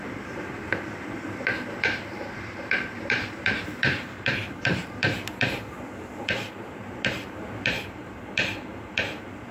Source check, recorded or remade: remade